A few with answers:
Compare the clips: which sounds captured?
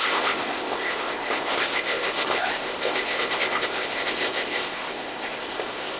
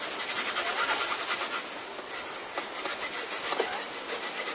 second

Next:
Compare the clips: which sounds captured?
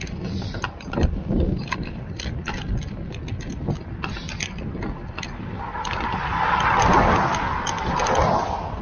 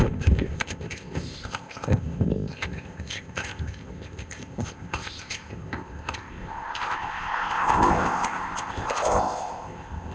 first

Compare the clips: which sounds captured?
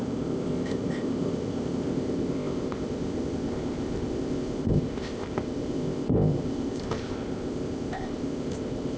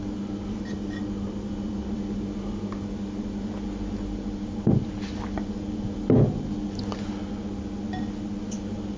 second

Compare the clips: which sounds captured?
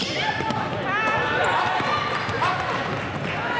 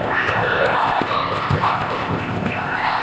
first